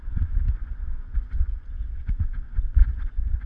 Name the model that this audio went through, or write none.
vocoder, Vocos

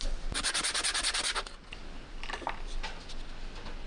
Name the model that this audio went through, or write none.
none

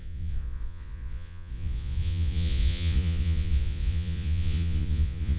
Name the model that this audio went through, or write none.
vocoder, Vocos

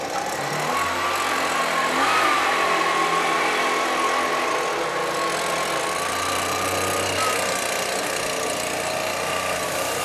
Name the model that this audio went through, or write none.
none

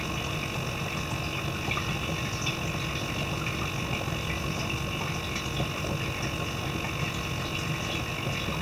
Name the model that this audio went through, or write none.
none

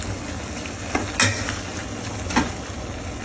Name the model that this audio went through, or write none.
none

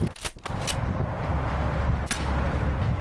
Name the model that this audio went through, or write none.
none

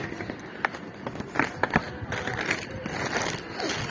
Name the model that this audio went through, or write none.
none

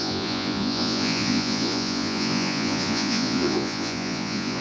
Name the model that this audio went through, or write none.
vocoder, Vocos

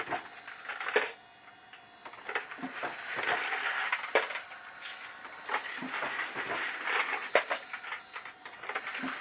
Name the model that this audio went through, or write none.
none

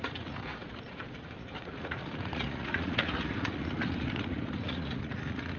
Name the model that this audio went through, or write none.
vocoder, Vocos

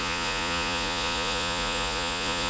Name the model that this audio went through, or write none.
vocoder, Vocos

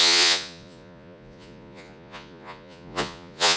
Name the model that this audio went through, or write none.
vocoder, Vocos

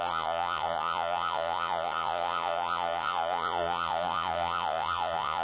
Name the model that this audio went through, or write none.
vocoder, Vocos